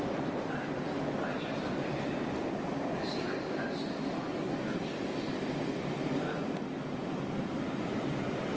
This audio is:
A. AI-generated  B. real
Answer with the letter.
B